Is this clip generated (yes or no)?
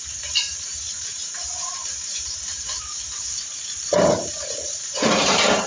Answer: yes